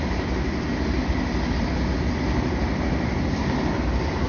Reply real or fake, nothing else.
real